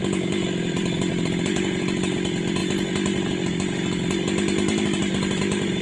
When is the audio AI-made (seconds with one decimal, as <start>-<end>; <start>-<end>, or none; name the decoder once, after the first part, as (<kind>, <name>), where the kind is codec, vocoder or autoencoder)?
0.0-2.6 (vocoder, BigVGAN v2); 5.0-5.8